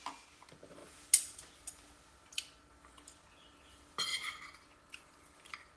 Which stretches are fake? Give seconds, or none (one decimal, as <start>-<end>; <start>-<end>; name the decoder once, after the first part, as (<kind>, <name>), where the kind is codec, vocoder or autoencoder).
4.1-4.9 (vocoder, BigVGAN v2)